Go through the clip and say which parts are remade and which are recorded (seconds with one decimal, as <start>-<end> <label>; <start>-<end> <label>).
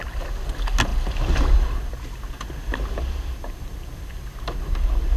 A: 0.0-5.2 recorded